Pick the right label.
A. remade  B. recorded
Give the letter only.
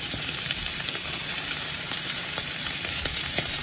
A